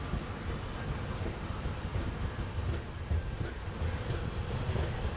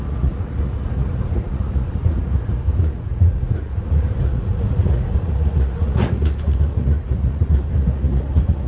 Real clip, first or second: first